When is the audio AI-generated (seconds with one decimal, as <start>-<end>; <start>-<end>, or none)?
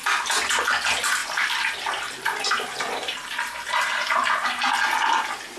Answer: 0.0-0.6; 1.2-4.6